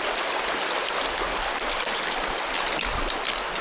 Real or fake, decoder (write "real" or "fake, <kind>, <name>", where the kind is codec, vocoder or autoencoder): real